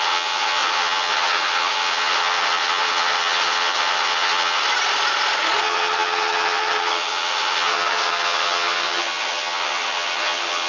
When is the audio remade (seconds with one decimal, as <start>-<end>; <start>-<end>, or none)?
0.0-4.6; 5.6-10.7